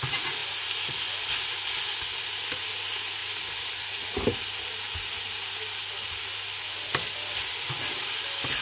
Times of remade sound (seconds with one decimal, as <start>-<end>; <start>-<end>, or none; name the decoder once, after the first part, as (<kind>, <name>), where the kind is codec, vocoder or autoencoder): none